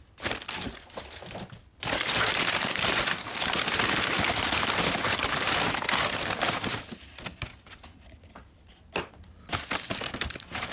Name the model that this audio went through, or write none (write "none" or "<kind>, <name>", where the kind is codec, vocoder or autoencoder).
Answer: none